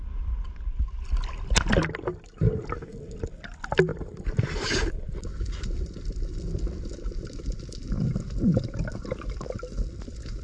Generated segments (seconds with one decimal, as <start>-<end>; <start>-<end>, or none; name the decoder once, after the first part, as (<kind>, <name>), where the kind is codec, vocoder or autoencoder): 3.9-5.3 (vocoder, BigVGAN v2)